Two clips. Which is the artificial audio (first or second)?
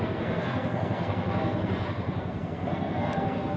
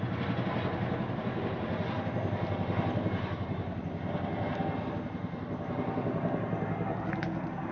first